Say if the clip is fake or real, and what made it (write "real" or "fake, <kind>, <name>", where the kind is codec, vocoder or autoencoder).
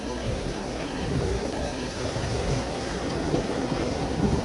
fake, codec, SNAC